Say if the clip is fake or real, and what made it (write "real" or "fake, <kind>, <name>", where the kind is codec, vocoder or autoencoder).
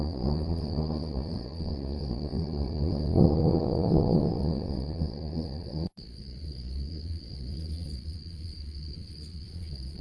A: fake, vocoder, Vocos